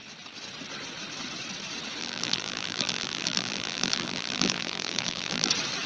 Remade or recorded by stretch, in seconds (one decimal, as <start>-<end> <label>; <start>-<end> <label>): 0.0-2.0 recorded; 2.0-5.5 remade; 5.5-5.9 recorded